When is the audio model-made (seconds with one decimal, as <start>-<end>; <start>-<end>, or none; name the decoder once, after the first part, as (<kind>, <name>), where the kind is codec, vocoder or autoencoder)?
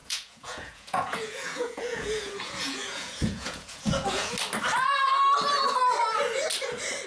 0.0-4.3 (vocoder, Vocos)